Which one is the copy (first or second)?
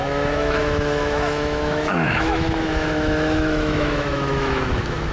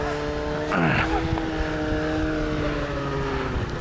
first